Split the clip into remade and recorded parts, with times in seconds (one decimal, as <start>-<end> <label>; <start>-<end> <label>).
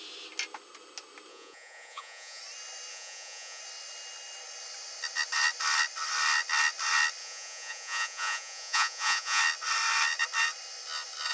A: 0.0-1.3 recorded; 1.3-2.4 remade; 2.4-2.9 recorded; 2.9-3.6 remade; 3.6-7.2 recorded; 7.2-9.4 remade; 9.4-11.3 recorded